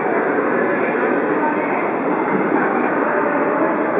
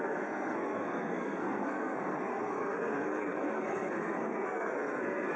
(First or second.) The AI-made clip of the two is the second